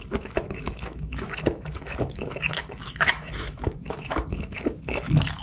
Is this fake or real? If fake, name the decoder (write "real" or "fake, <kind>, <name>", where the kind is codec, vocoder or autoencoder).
fake, autoencoder, DAC-VAE